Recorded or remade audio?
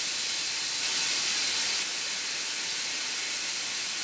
recorded